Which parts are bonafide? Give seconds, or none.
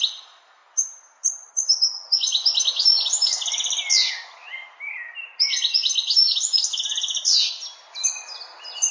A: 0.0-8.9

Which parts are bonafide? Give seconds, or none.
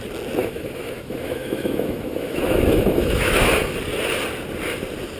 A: 0.0-0.4; 3.5-5.2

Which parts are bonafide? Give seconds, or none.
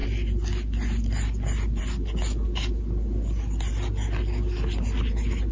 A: 0.0-5.5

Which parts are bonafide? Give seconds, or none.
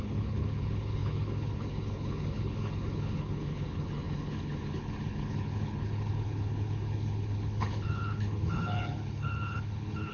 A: none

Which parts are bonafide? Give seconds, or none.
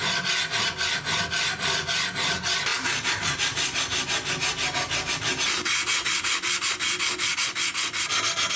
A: 0.0-2.7; 3.3-8.6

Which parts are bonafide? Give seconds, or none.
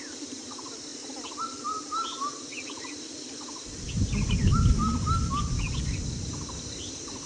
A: 0.0-7.3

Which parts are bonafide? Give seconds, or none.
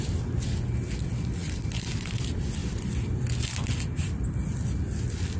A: 0.0-1.4; 2.1-2.6; 3.1-5.4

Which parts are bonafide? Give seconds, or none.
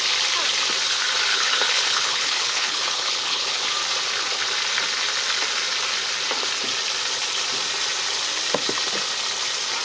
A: 0.0-1.3; 3.6-9.8